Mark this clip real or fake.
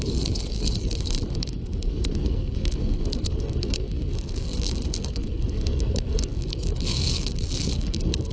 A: fake